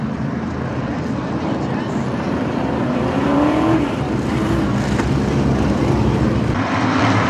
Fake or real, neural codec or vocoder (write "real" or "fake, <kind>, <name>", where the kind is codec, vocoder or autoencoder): fake, vocoder, BigVGAN v2